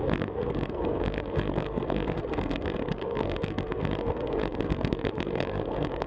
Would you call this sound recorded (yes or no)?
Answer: no